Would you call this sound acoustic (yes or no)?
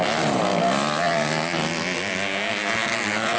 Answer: yes